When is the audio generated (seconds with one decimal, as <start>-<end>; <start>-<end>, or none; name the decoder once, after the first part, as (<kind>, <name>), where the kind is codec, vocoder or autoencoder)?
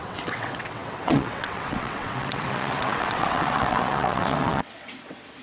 0.0-5.4 (vocoder, WaveNeXt)